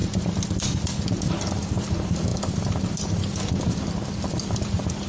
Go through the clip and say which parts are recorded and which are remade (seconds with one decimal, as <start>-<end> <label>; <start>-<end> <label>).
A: 0.0-1.2 recorded; 1.2-5.1 remade